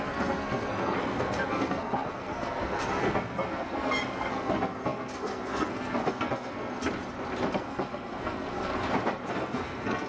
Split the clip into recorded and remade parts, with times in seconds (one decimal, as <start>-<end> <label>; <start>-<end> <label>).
0.0-6.8 remade; 6.8-7.5 recorded; 7.5-8.7 remade; 8.7-9.3 recorded; 9.3-10.1 remade